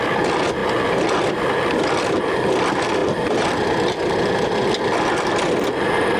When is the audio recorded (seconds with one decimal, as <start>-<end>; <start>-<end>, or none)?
0.0-6.2